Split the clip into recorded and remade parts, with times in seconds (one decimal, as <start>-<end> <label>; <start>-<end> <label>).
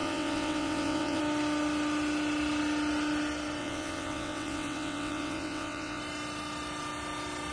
0.0-1.2 remade; 1.2-3.6 recorded; 3.6-6.0 remade; 6.0-7.5 recorded